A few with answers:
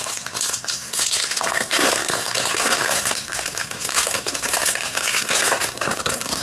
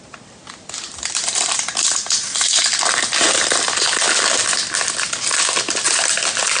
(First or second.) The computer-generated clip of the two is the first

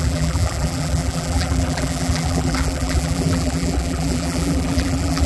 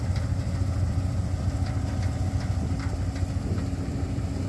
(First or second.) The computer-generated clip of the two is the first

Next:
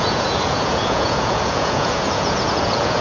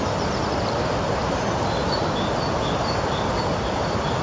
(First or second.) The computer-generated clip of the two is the first